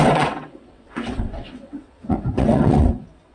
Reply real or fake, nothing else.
fake